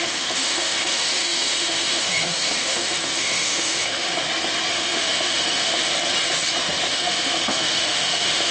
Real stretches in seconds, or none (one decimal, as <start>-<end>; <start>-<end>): 4.1-4.7; 5.9-6.9